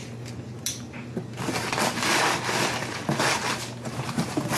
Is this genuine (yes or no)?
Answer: yes